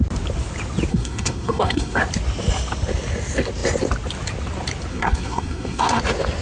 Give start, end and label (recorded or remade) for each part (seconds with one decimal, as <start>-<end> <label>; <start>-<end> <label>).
0.0-0.9 recorded; 0.9-2.0 remade; 2.0-4.9 recorded; 4.9-6.0 remade; 6.0-6.4 recorded